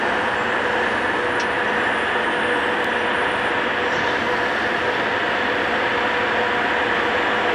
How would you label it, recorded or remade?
recorded